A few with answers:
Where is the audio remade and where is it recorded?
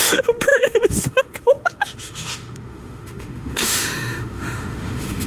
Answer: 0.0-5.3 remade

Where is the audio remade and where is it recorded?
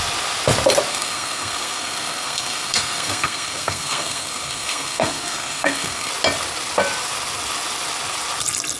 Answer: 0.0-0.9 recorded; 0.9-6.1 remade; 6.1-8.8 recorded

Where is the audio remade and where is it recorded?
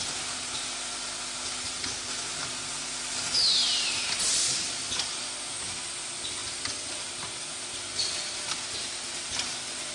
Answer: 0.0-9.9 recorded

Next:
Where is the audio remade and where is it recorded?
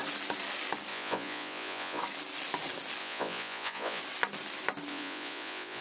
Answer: 0.0-0.9 recorded; 0.9-2.0 remade; 2.0-3.0 recorded; 3.0-4.0 remade; 4.0-4.9 recorded; 4.9-5.8 remade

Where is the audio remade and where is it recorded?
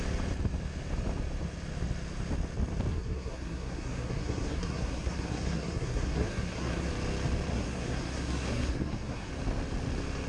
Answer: 0.0-2.9 recorded; 2.9-6.9 remade; 6.9-7.5 recorded; 7.5-9.3 remade; 9.3-10.3 recorded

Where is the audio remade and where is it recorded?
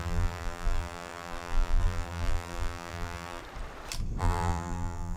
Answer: 0.0-3.4 remade; 3.4-4.2 recorded; 4.2-5.2 remade